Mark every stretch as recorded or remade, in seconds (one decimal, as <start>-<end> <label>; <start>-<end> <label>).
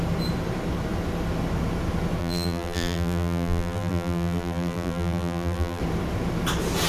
0.0-2.2 recorded; 2.2-5.8 remade; 5.8-6.9 recorded